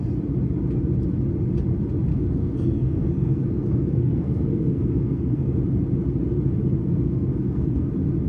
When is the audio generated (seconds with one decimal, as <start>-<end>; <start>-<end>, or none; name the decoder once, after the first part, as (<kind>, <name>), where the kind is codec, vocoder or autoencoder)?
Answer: 2.1-5.6 (codec, SNAC); 6.8-7.9